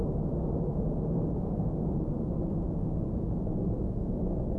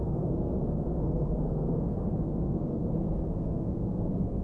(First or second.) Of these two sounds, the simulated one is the second